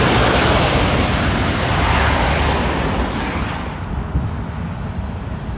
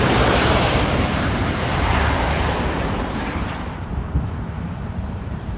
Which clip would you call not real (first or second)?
second